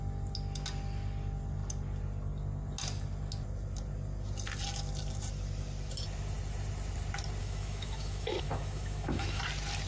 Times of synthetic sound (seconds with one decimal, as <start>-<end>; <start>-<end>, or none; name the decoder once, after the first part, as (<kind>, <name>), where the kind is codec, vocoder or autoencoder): 7.4-9.4 (autoencoder, DAC-VAE)